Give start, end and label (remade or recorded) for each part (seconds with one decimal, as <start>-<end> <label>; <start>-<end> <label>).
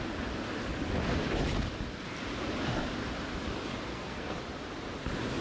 0.0-3.9 recorded; 3.9-4.4 remade; 4.4-5.4 recorded